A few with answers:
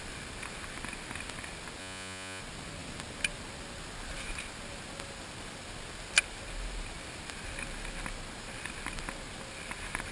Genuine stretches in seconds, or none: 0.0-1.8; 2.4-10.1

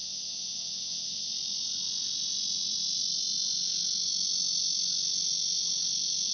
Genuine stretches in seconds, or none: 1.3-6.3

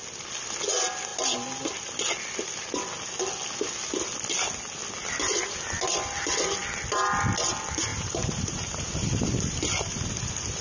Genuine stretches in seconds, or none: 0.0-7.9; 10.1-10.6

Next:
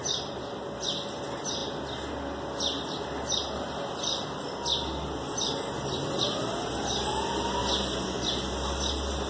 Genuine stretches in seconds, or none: 0.0-9.3